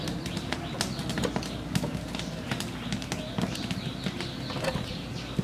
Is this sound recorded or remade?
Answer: recorded